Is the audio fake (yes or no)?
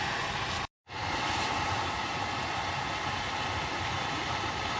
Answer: no